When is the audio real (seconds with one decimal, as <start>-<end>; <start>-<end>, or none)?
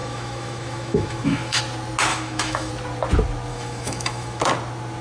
1.6-2.1; 2.7-3.5; 4.4-5.0